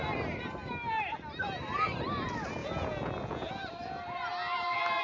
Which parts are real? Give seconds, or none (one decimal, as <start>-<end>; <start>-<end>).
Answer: 0.0-2.6; 3.7-5.0